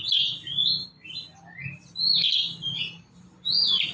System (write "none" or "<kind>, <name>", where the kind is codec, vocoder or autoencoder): none